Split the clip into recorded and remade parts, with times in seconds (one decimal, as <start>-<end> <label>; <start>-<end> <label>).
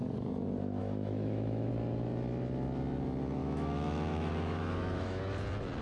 0.0-0.8 recorded; 0.8-1.7 remade; 1.7-3.4 recorded; 3.4-5.2 remade; 5.2-5.8 recorded